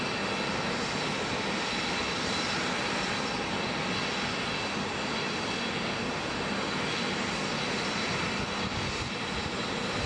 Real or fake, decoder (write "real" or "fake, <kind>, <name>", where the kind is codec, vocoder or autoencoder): real